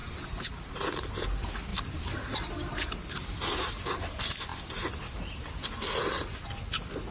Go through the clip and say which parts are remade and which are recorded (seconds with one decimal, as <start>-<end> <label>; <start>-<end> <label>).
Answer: 0.0-0.7 remade; 0.7-1.7 recorded; 1.7-4.0 remade; 4.0-7.1 recorded